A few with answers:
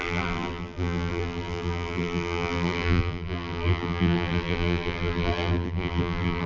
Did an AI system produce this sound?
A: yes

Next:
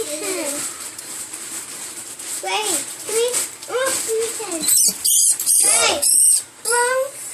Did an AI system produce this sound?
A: yes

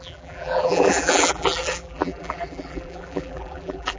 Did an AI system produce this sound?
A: yes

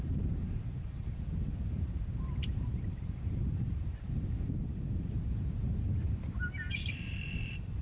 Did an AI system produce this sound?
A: yes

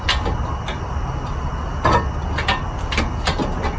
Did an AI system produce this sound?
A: no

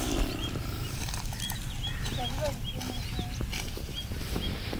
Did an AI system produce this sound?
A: no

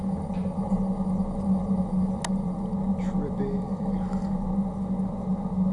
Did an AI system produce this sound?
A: no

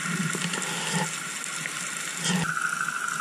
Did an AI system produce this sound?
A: no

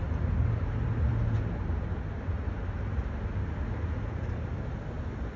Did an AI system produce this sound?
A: no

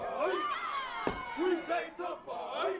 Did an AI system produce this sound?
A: no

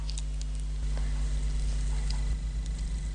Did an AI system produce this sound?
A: no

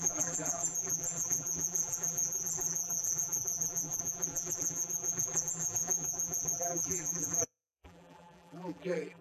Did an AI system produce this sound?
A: yes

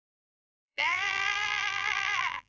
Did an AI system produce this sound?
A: yes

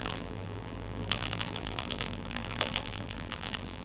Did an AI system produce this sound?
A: yes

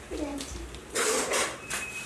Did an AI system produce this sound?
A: yes